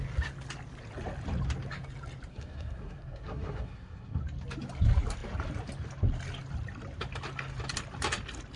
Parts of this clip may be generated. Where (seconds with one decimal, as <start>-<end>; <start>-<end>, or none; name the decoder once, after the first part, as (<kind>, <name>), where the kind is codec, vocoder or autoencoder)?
2.3-4.2 (codec, SNAC)